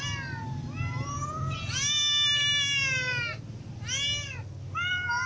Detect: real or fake real